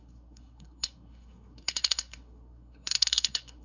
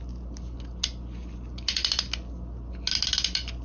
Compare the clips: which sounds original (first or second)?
second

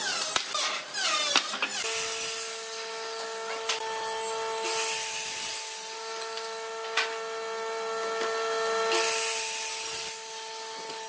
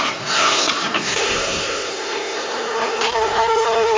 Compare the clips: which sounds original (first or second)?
first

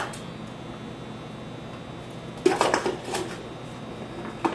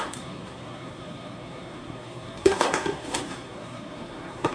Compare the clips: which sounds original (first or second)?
first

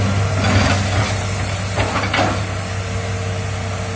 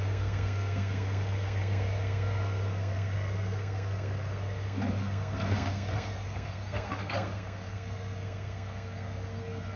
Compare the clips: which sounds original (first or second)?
first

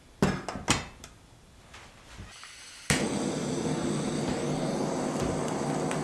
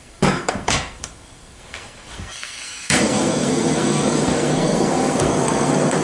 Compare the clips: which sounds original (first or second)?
first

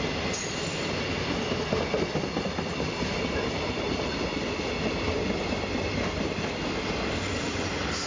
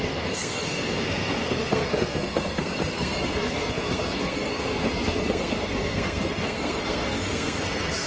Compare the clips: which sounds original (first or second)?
first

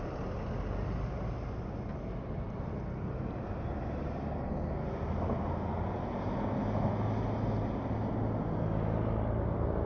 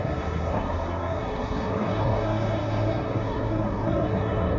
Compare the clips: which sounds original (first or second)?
first